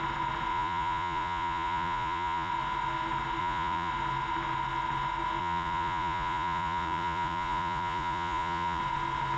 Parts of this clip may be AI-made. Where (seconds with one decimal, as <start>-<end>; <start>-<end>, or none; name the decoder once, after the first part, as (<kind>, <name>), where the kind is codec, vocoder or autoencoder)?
0.5-2.5 (vocoder, Vocos); 3.4-3.9; 5.4-8.8